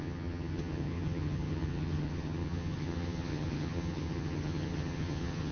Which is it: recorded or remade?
remade